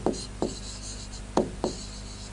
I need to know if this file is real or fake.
real